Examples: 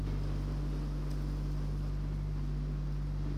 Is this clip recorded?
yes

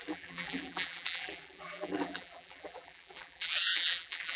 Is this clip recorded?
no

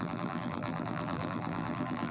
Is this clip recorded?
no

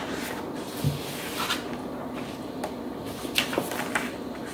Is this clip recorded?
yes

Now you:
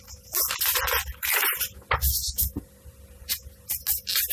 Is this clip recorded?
yes